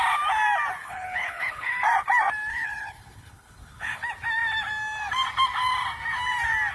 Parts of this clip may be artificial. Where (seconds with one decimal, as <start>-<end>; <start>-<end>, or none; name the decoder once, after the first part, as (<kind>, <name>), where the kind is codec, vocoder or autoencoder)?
0.8-1.7 (codec, HILCodec); 2.5-4.0